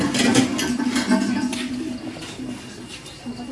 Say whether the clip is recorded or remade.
recorded